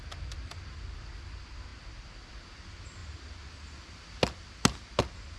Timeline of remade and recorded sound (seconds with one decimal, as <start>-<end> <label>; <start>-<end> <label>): 0.0-5.4 recorded